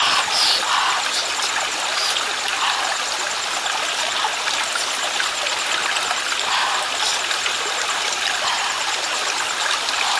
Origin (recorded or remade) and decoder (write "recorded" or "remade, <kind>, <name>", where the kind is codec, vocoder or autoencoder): recorded